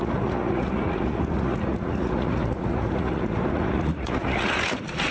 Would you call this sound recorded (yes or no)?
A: no